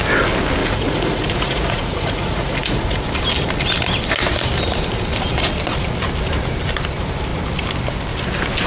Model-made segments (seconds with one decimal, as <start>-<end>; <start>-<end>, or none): 0.6-3.0